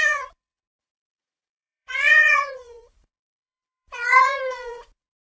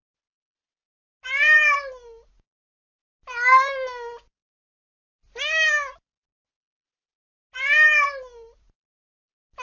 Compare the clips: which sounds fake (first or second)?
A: first